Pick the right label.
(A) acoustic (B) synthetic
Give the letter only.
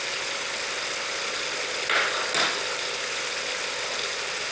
A